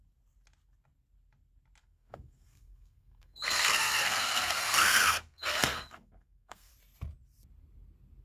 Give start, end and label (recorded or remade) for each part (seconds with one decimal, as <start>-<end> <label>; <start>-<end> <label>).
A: 0.0-1.8 recorded; 1.8-6.7 remade; 6.7-8.2 recorded